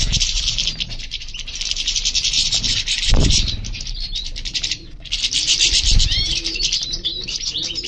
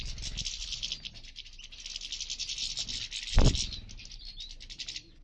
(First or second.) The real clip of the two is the second